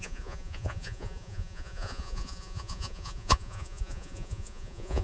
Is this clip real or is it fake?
fake